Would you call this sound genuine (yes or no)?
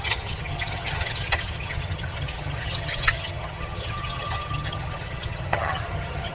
no